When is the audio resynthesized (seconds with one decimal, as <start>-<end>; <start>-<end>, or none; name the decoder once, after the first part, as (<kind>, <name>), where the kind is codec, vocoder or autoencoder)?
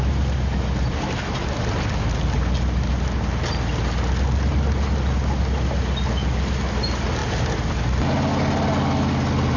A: none